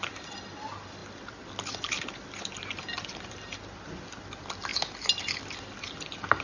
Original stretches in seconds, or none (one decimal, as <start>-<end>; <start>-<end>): 0.0-6.4